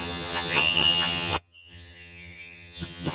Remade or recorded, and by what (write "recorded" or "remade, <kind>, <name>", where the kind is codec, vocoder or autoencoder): remade, vocoder, HiFi-GAN